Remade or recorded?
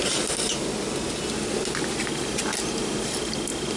recorded